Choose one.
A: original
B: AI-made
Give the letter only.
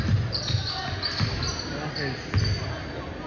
A